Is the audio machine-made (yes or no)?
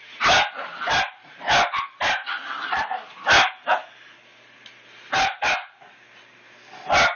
no